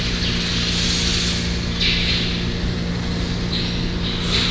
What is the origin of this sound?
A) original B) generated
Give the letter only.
A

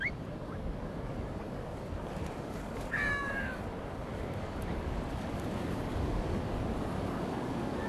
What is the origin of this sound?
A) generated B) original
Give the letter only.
A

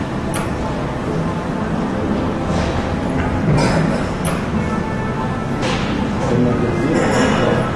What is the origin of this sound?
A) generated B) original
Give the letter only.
B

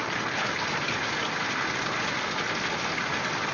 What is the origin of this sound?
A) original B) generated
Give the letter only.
A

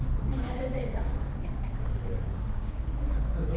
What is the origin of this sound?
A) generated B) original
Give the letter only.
A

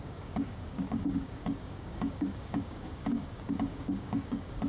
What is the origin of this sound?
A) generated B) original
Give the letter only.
A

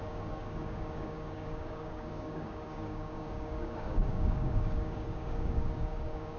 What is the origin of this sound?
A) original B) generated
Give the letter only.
B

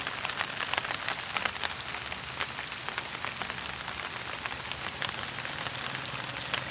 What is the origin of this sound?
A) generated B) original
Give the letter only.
B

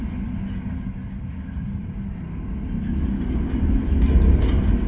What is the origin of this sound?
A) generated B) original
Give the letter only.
B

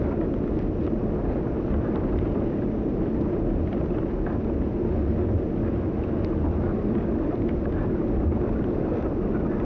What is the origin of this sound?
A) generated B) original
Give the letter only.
B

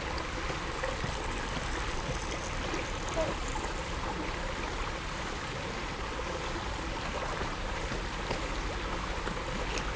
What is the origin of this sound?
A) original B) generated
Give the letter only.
A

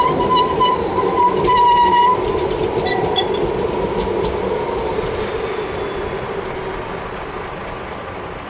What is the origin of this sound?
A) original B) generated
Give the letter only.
A